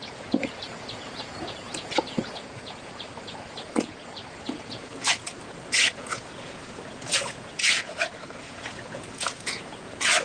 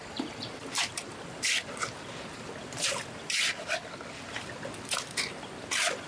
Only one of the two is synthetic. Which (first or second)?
first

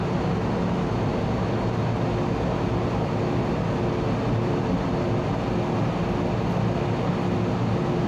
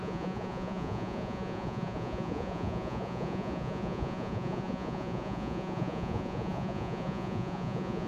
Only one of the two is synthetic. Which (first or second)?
second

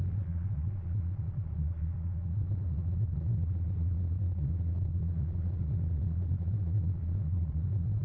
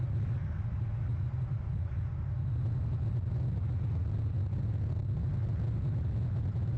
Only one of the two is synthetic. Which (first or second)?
first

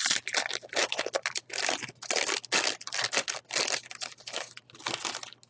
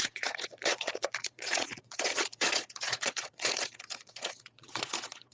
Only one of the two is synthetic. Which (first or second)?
second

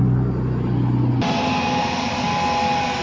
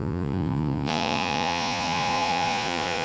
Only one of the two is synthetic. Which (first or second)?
second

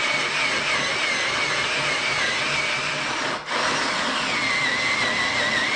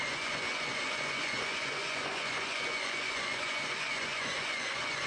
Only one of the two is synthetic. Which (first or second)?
second